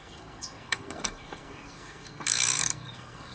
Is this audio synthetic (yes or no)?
yes